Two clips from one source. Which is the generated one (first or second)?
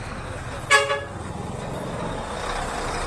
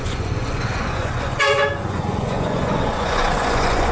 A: second